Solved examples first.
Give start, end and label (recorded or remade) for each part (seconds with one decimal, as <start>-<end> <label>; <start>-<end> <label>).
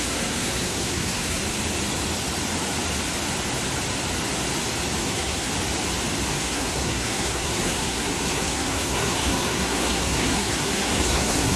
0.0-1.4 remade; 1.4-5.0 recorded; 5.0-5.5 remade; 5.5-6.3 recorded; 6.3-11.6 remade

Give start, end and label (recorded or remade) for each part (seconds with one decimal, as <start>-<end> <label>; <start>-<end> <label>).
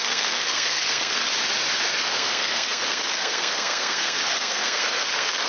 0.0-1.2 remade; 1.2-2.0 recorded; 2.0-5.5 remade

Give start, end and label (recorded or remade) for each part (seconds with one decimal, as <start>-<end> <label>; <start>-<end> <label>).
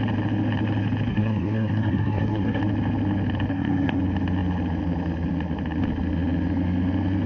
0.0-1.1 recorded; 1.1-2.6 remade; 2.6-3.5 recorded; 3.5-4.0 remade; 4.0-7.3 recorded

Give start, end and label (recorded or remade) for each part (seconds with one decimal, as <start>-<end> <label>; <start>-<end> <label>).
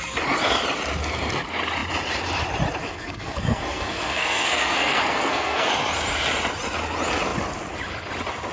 0.0-2.8 recorded; 2.8-5.7 remade; 5.7-8.5 recorded